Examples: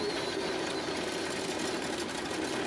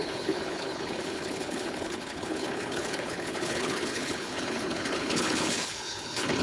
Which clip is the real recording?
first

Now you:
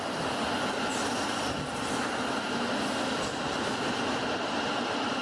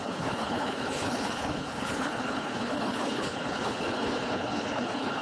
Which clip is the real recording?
first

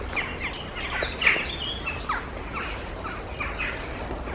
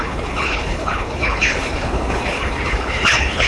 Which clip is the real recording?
first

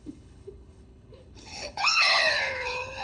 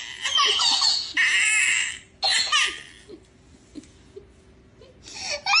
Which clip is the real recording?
second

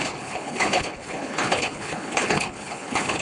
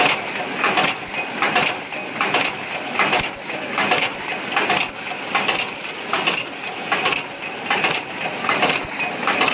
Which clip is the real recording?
second